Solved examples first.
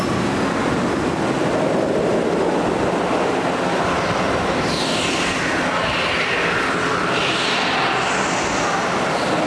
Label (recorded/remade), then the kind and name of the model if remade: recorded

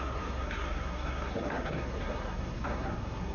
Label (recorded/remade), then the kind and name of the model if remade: remade, codec, SNAC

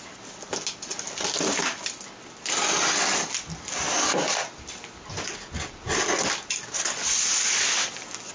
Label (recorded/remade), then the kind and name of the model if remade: recorded